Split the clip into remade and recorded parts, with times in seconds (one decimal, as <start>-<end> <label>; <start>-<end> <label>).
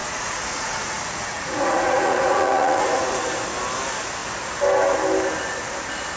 0.0-3.2 remade; 3.2-6.2 recorded